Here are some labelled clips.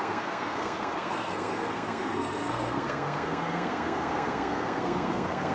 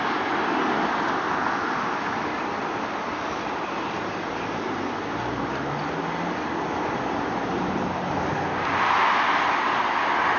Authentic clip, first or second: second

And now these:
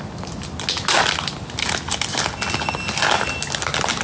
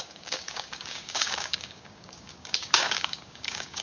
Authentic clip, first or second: first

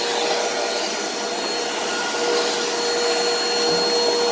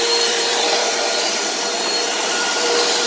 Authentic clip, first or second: first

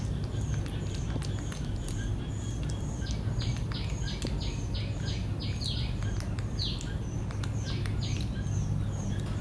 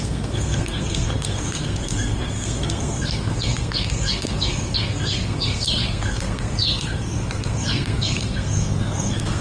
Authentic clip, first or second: first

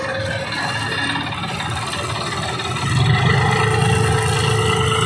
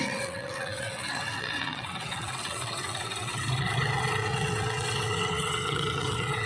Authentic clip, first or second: first